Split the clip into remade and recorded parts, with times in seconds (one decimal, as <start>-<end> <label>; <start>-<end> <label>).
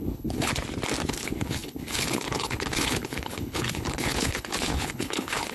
0.0-0.5 remade; 0.5-1.1 recorded; 1.1-5.5 remade